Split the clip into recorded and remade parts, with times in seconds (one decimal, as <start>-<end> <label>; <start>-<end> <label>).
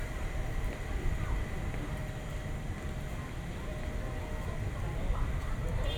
0.0-2.0 remade; 2.0-5.6 recorded; 5.6-6.0 remade